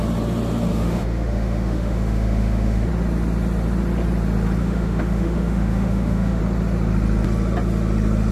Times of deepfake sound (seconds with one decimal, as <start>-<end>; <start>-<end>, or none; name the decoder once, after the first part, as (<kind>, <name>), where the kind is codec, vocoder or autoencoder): 0.7-2.9 (autoencoder, DAC-VAE); 4.6-6.4